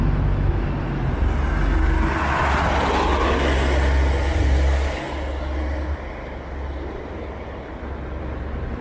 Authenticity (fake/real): real